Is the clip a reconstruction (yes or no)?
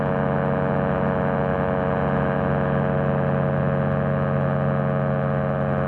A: no